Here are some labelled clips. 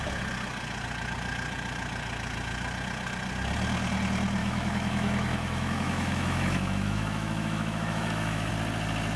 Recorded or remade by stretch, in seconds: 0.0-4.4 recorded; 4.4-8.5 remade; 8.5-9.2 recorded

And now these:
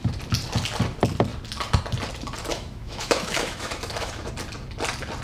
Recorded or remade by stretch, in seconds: 0.0-2.5 recorded; 2.5-4.3 remade; 4.3-5.2 recorded

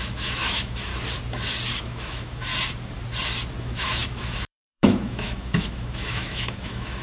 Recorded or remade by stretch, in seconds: 0.0-0.9 remade; 0.9-1.8 recorded; 1.8-2.5 remade; 2.5-3.6 recorded; 3.6-7.0 remade

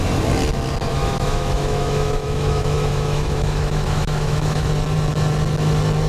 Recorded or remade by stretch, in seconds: 0.0-1.0 recorded; 1.0-4.7 remade; 4.7-6.1 recorded